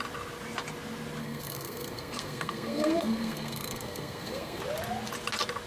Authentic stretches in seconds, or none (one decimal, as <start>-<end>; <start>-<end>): 0.0-1.2; 4.6-5.7